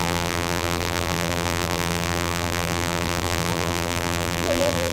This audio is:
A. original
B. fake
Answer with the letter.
B